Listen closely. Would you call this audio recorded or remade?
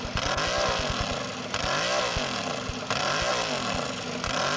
recorded